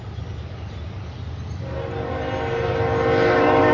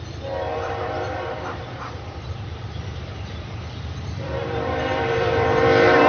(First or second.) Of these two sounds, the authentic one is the first